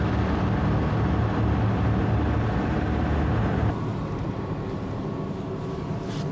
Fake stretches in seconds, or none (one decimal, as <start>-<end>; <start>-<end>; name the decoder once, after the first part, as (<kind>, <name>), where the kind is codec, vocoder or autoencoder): none